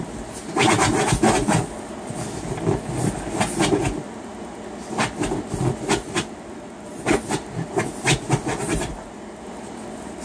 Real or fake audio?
real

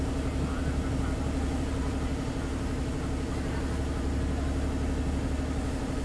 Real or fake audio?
real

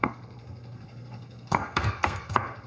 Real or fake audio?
fake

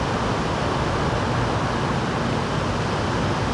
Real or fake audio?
real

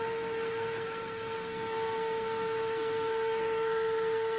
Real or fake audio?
fake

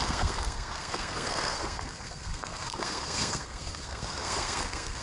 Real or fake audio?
fake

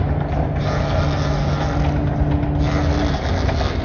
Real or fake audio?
real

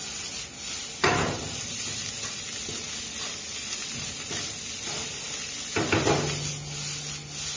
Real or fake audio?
real